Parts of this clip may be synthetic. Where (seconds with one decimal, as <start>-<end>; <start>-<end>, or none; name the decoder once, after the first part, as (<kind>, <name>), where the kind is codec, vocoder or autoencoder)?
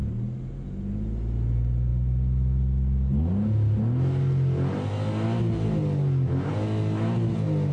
none